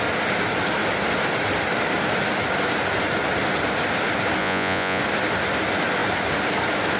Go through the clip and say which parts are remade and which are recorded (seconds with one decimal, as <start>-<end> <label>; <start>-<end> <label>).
0.0-4.4 recorded; 4.4-5.0 remade; 5.0-7.0 recorded

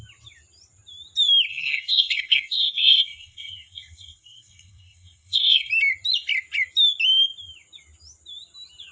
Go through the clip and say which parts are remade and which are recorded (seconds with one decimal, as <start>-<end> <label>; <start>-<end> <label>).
0.0-1.5 recorded; 1.5-5.7 remade; 5.7-8.9 recorded